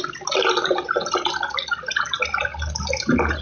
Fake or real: real